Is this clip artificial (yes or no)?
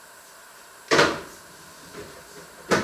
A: yes